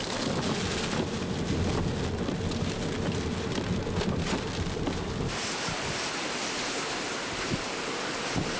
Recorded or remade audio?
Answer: recorded